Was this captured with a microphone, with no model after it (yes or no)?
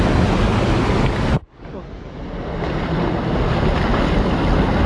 yes